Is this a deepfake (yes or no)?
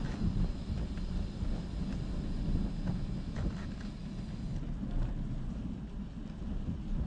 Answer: no